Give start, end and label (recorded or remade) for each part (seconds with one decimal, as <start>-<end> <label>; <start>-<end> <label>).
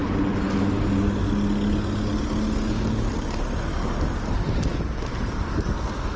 0.0-6.2 recorded